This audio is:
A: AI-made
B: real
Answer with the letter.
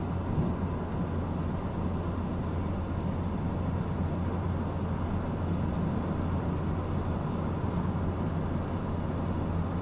B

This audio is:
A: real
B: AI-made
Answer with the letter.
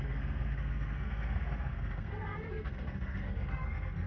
B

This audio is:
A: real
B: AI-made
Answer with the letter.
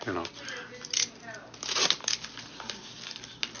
A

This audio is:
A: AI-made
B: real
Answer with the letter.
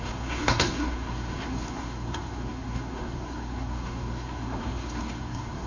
A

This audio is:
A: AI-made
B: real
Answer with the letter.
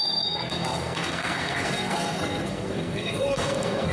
A